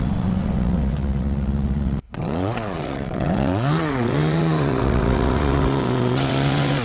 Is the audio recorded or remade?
remade